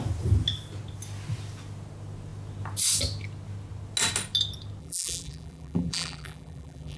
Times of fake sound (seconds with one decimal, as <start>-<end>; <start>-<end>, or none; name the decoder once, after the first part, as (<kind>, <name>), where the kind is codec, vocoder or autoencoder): 4.8-7.0 (vocoder, BigVGAN v2)